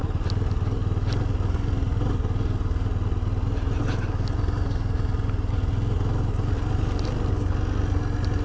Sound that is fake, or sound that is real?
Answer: real